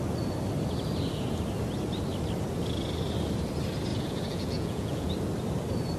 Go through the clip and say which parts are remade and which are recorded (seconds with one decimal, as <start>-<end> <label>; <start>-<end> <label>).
0.0-3.9 recorded; 3.9-5.1 remade; 5.1-6.0 recorded